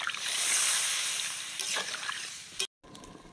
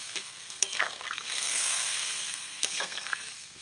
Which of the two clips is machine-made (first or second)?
second